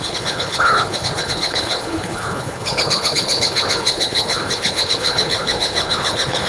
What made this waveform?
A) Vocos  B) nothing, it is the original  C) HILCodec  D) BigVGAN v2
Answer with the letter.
C